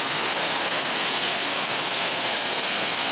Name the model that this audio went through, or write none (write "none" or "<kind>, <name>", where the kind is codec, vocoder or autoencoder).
codec, SNAC